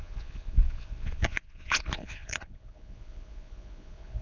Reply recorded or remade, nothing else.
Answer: remade